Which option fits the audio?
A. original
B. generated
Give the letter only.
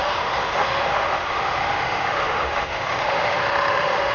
B